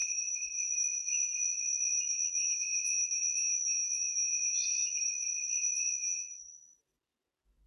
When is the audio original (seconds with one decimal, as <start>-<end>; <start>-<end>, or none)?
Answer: 1.9-4.7; 5.8-7.7

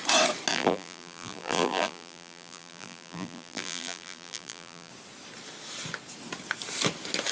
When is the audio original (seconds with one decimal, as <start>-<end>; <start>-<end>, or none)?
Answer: 0.0-0.5; 4.9-7.3

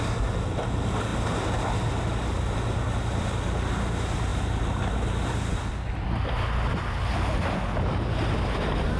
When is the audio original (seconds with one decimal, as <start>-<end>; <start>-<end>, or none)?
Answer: 0.0-4.3; 4.9-9.0

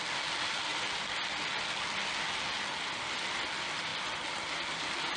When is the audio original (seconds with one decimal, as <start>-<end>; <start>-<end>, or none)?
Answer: 0.0-5.2